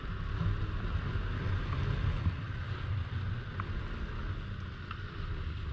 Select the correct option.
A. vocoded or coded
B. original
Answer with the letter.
B